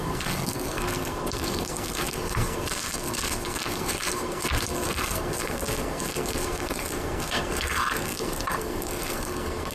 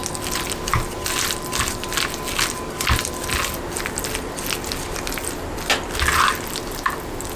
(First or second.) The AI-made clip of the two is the first